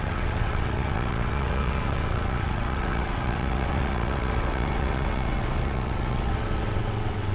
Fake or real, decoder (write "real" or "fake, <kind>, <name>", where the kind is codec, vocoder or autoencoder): fake, vocoder, WaveNeXt